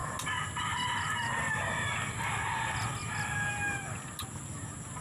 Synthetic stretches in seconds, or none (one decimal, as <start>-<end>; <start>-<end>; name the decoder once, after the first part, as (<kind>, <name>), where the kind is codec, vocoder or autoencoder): none

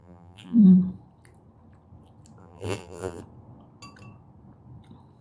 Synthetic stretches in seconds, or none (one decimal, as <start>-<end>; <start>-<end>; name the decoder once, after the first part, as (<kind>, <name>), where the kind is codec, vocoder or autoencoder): 0.0-0.6 (vocoder, BigVGAN v2); 2.4-3.2

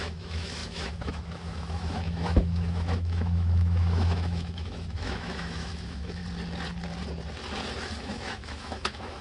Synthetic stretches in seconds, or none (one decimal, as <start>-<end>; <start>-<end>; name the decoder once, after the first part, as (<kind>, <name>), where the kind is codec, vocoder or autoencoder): 0.0-6.2 (autoencoder, DAC-VAE); 8.0-9.2

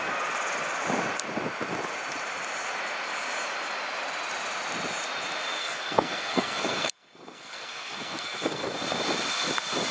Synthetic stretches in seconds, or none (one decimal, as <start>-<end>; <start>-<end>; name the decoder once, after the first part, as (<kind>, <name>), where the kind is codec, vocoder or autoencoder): 5.6-8.7 (codec, SNAC)